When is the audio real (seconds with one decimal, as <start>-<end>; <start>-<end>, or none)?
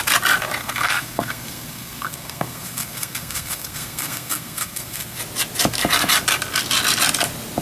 0.0-0.6; 5.2-7.6